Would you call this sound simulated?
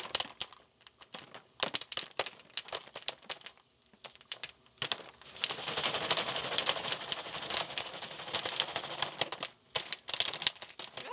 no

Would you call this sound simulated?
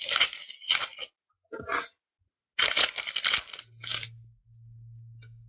no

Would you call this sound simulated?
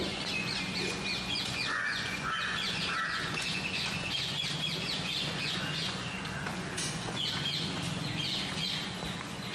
yes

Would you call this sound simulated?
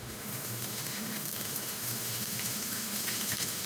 yes